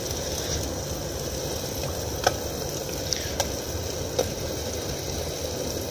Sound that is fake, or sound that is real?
real